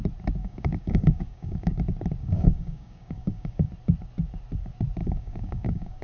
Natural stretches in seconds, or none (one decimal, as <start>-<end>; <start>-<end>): 0.0-0.4; 1.8-2.2; 3.7-5.0